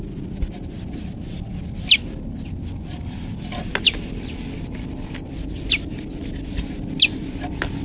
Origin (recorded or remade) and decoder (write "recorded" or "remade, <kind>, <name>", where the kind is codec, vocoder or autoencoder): recorded